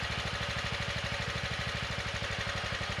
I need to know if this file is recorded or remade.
recorded